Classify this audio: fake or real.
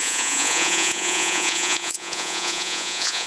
fake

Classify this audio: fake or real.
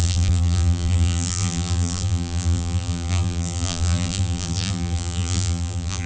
fake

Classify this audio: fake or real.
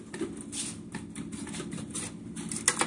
real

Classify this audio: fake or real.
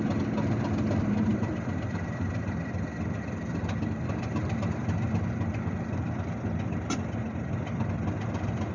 real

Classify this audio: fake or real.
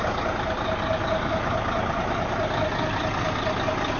real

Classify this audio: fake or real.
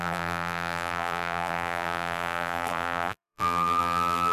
fake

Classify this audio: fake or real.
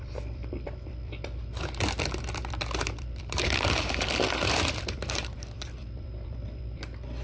fake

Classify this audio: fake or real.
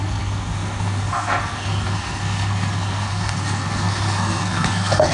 fake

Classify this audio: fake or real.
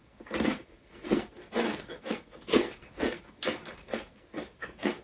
fake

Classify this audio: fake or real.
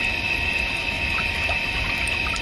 fake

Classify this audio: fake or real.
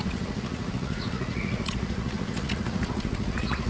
fake